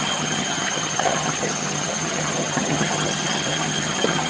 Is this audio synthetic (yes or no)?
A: yes